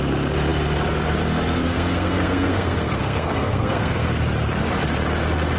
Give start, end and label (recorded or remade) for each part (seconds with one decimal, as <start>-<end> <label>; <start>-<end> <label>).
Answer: 0.0-1.6 recorded; 1.6-4.1 remade; 4.1-5.6 recorded